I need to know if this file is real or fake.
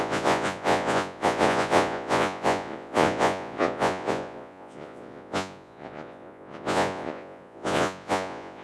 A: fake